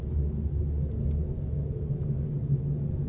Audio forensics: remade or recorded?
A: recorded